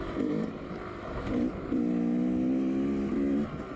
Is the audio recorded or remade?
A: recorded